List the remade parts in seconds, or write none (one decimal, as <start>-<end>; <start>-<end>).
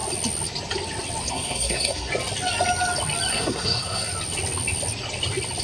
1.3-2.1; 3.3-4.1